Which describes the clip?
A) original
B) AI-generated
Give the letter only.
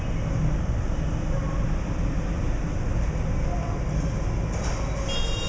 A